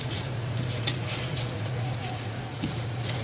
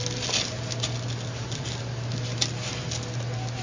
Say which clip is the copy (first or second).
first